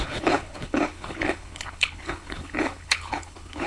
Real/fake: fake